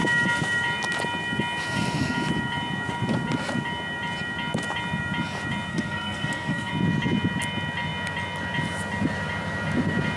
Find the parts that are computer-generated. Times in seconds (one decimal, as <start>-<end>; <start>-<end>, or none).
5.7-6.7

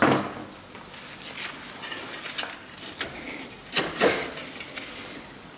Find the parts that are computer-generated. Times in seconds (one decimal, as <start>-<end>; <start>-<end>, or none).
0.0-0.4; 3.8-4.2; 5.1-5.6

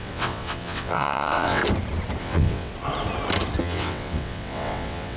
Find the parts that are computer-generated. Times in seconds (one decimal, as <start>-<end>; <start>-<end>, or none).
0.0-1.6; 2.2-2.7; 3.6-5.2

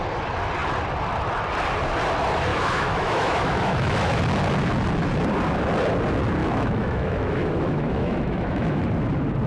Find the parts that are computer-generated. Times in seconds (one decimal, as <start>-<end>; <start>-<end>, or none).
2.5-4.2; 6.4-8.8

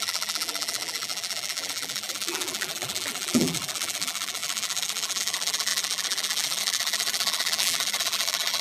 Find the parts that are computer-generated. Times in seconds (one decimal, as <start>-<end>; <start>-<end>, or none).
0.0-8.6